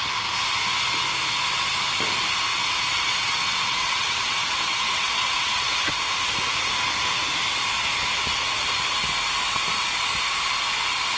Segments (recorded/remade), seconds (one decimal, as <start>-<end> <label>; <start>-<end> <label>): 0.0-2.5 recorded; 2.5-6.0 remade; 6.0-11.2 recorded